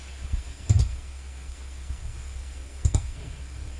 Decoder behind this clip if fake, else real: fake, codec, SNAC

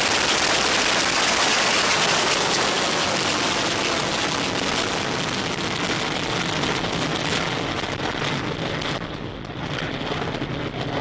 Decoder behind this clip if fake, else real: real